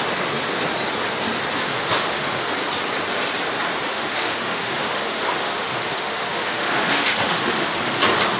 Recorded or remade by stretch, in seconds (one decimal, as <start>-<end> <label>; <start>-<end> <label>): 0.0-1.6 recorded; 1.6-2.5 remade; 2.5-3.9 recorded; 3.9-8.0 remade; 8.0-8.4 recorded